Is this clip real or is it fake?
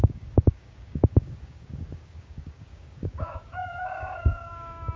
fake